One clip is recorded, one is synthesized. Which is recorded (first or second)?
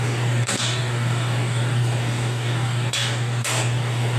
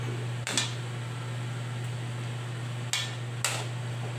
second